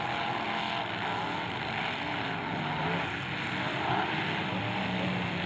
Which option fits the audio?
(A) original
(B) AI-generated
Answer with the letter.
A